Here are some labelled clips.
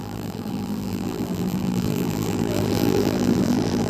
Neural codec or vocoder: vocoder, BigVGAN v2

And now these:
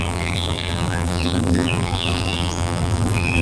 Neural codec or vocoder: vocoder, BigVGAN v2